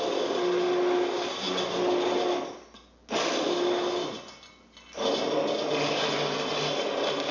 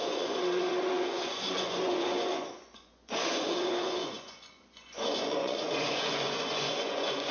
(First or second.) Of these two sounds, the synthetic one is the second